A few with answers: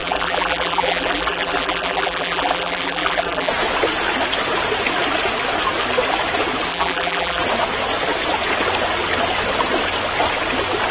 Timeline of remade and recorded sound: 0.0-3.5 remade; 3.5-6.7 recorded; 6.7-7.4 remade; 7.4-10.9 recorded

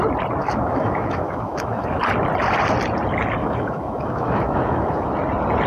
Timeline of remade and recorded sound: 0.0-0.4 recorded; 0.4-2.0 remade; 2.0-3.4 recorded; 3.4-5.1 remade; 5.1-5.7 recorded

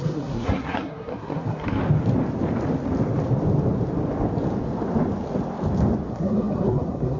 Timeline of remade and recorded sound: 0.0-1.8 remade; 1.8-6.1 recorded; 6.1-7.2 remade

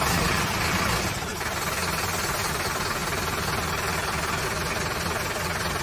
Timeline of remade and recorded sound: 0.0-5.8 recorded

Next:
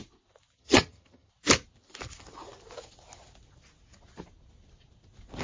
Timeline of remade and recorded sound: 0.0-0.6 recorded; 0.6-1.3 remade; 1.3-5.4 recorded

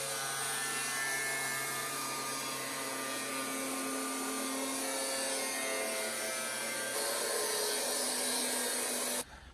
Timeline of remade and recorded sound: 0.0-1.8 recorded; 1.8-2.9 remade; 2.9-9.5 recorded

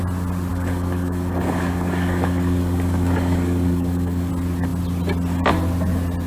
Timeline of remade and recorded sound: 0.0-0.5 recorded; 0.5-4.3 remade; 4.3-6.3 recorded

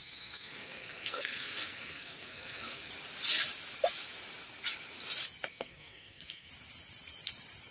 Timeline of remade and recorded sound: 0.0-2.9 remade; 2.9-5.5 recorded; 5.5-6.5 remade; 6.5-7.7 recorded